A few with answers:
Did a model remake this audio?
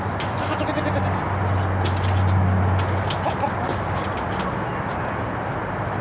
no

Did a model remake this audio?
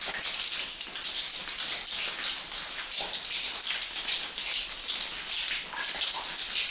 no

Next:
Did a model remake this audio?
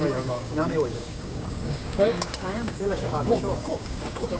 yes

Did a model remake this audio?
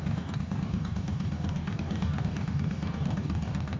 yes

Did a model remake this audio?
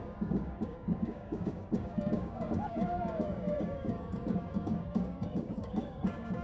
yes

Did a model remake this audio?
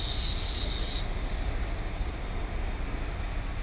no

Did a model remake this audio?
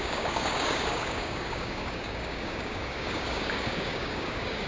yes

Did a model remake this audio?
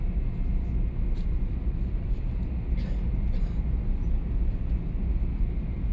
no